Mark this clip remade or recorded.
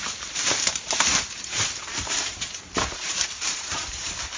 remade